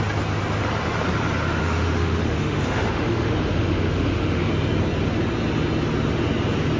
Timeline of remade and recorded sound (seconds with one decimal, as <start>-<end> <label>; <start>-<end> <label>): 0.0-1.6 recorded; 1.6-4.5 remade; 4.5-6.8 recorded